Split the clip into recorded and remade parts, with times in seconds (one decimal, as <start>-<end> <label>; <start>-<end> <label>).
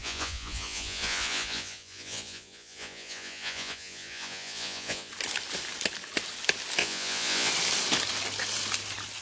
0.0-5.1 remade; 5.1-6.8 recorded; 6.8-7.5 remade; 7.5-9.2 recorded